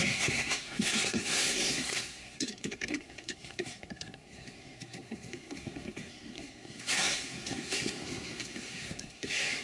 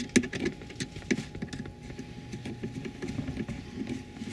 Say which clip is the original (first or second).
second